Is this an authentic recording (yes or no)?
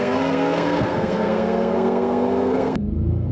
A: no